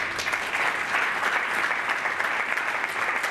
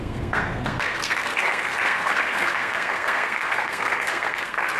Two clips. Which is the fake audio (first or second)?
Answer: second